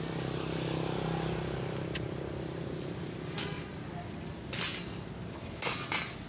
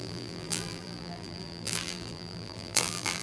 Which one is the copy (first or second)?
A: second